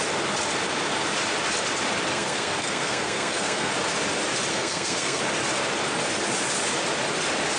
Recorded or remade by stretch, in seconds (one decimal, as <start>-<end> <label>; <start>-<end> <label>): 0.0-2.1 recorded; 2.1-3.7 remade; 3.7-4.5 recorded; 4.5-5.2 remade; 5.2-7.6 recorded